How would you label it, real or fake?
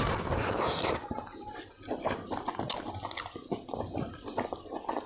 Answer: real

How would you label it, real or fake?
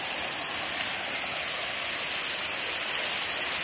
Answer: real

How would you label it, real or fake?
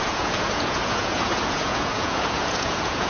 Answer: fake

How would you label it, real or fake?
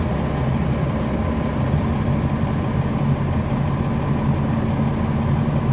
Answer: real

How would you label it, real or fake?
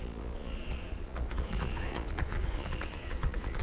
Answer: fake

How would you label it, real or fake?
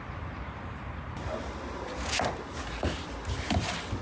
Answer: real